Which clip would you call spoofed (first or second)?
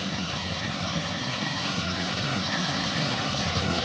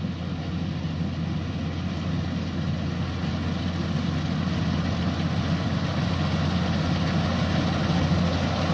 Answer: first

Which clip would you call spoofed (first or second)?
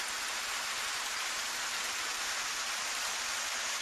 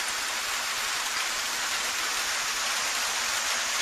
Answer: second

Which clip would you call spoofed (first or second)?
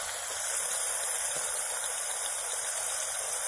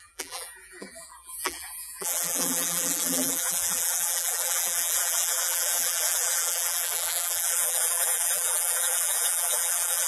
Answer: second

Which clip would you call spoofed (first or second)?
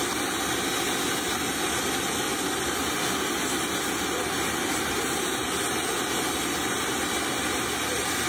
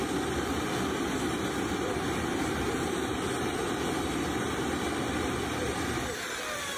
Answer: second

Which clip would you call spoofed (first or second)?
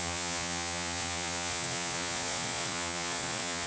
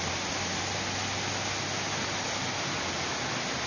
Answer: first